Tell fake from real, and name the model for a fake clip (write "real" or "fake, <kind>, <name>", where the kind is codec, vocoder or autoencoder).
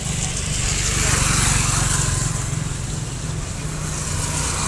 real